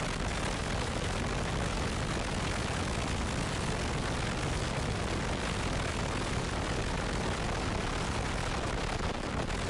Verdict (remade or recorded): recorded